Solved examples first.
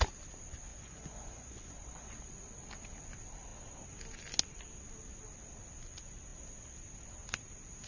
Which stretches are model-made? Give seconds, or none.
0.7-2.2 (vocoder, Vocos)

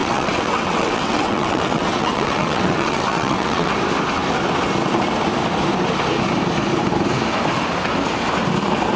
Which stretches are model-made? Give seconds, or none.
0.0-3.7 (vocoder, WaveNeXt)

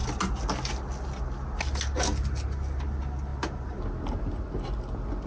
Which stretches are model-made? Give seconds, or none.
none

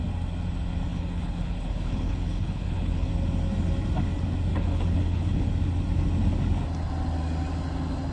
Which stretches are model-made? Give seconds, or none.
0.9-3.1 (codec, HILCodec); 4.5-5.5